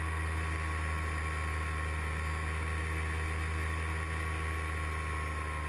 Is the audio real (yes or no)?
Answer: yes